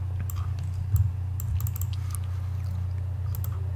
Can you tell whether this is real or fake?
real